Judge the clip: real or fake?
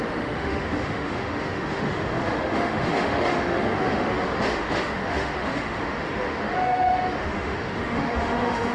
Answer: fake